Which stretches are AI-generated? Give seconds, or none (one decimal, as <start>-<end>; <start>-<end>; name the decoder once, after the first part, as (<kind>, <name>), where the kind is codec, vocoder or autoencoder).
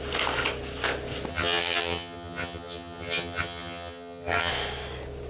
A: 1.3-4.5 (vocoder, HiFi-GAN)